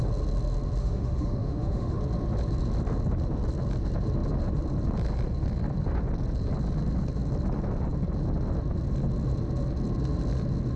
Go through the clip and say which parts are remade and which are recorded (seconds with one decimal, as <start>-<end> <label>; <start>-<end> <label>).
0.0-0.8 recorded; 0.8-2.0 remade; 2.0-10.8 recorded